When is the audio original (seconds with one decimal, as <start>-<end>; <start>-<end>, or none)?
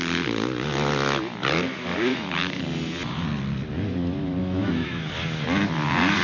0.0-2.1; 2.6-4.4; 5.1-6.2